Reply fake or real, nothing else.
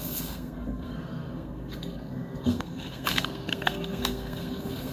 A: fake